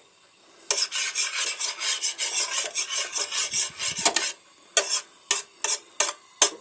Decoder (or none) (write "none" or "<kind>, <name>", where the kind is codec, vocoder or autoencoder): none